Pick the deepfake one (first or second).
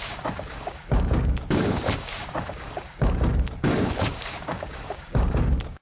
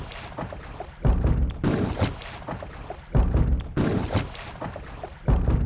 first